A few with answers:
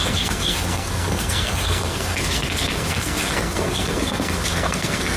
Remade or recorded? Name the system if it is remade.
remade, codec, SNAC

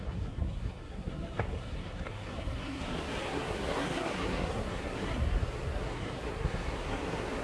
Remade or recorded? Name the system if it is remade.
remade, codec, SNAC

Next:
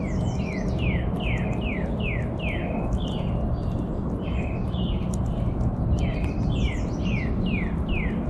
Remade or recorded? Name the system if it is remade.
recorded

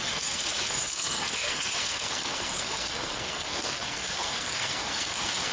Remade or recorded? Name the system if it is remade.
remade, codec, SNAC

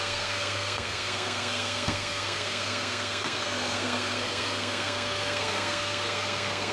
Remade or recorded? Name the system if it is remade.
remade, codec, SNAC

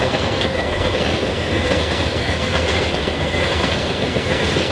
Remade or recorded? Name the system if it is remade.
remade, codec, SNAC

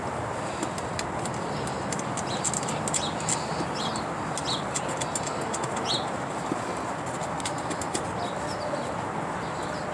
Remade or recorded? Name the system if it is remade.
recorded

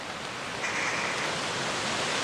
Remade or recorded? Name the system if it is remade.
recorded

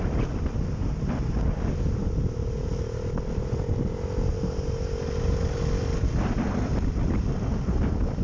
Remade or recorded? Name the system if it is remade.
recorded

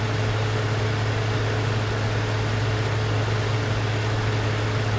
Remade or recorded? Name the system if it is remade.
recorded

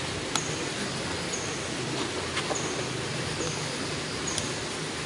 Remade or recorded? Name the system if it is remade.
recorded